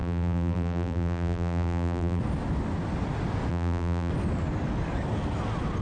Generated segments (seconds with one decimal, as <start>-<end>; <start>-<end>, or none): 0.0-2.2; 3.5-4.1